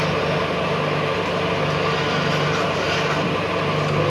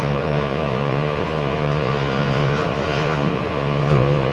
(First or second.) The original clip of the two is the first